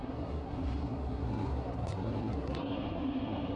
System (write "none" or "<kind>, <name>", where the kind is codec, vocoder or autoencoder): codec, SNAC